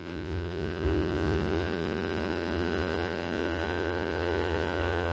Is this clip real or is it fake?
fake